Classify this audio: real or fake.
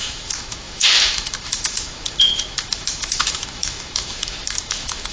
fake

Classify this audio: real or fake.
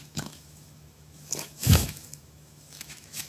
fake